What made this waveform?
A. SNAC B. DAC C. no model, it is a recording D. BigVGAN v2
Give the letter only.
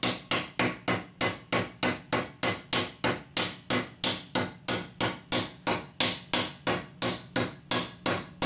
C